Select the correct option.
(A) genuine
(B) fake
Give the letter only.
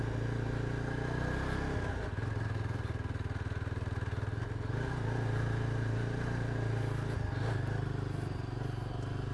A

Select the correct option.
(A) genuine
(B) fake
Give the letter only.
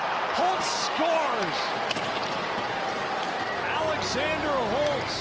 A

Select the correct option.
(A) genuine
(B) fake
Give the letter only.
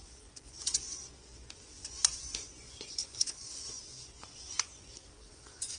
B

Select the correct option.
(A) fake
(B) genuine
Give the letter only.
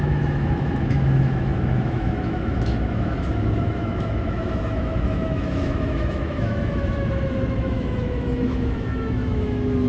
A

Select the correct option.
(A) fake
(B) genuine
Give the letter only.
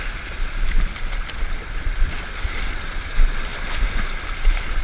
B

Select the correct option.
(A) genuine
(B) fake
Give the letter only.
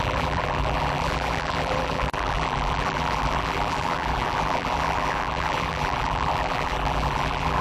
B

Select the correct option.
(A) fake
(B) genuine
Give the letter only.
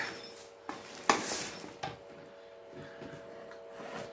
B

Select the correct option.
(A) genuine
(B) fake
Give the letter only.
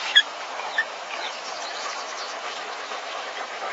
B